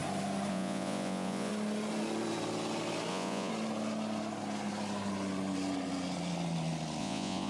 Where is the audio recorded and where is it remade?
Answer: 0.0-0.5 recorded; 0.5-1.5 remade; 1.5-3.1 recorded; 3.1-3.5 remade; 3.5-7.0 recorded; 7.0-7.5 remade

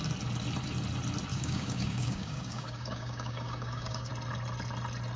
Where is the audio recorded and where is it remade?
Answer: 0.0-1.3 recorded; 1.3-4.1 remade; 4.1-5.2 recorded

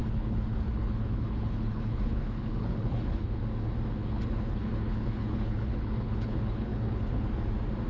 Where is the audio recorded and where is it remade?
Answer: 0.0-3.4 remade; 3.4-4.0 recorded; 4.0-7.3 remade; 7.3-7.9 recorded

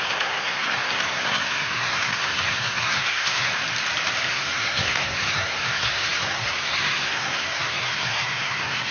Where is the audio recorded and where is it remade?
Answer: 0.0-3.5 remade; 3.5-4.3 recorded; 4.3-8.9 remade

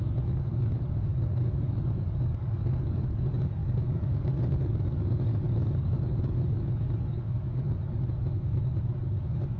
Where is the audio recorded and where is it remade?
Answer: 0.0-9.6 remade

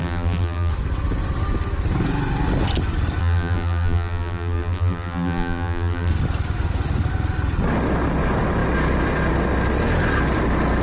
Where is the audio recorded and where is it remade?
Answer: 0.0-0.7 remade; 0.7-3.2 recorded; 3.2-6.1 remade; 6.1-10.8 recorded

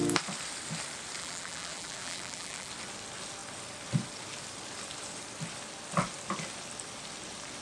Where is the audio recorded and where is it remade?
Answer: 0.0-1.2 recorded; 1.2-2.7 remade; 2.7-7.6 recorded

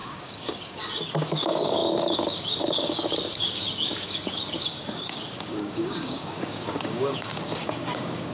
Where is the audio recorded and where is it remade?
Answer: 0.0-8.3 remade